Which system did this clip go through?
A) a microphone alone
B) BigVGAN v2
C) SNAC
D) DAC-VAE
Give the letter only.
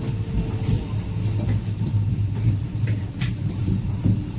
A